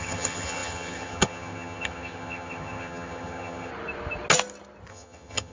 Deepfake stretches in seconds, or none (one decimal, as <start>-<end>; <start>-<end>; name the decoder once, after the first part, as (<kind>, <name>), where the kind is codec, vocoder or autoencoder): 0.0-3.7 (vocoder, HiFi-GAN); 4.9-5.5